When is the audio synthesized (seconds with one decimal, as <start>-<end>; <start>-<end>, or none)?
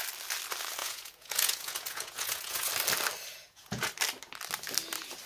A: 0.8-2.7; 3.3-3.9